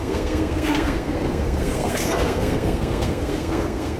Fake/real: fake